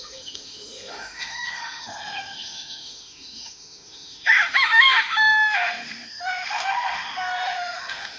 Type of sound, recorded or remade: remade